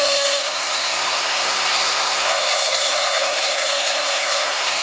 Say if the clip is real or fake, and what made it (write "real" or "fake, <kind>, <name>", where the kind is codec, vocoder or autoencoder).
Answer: fake, codec, SNAC